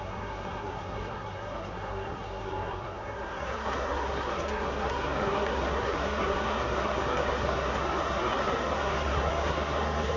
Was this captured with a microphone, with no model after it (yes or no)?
no